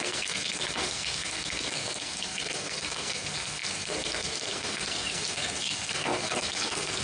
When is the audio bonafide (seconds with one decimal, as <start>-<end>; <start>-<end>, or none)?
none